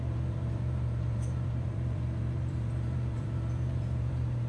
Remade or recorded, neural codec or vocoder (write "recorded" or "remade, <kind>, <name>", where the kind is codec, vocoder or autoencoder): remade, vocoder, BigVGAN v2